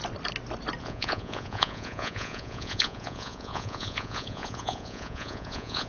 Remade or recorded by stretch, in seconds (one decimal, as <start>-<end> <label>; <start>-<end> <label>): 0.0-0.8 recorded; 0.8-5.9 remade